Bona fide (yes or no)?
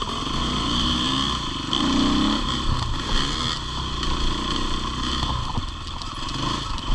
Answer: yes